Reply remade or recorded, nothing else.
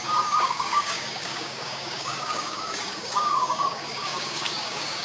remade